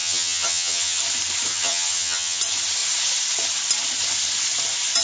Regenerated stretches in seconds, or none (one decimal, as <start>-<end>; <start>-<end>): 0.0-1.0; 1.5-2.4